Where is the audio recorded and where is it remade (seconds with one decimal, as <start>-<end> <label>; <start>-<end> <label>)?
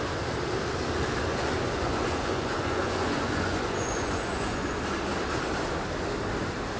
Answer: 0.0-1.3 recorded; 1.3-4.8 remade; 4.8-6.8 recorded